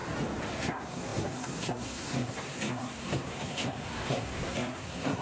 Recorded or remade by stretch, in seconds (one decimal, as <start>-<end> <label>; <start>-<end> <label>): 0.0-0.6 recorded; 0.6-5.2 remade